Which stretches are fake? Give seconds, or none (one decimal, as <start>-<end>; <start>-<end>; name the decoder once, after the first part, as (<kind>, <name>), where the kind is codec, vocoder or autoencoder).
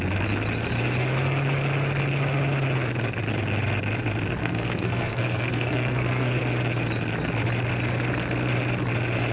4.4-6.4 (codec, SNAC)